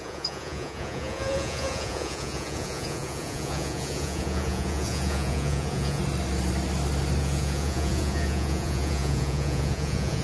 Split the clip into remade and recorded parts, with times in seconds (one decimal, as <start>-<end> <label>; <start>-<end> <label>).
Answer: 0.0-6.0 remade; 6.0-7.2 recorded; 7.2-10.2 remade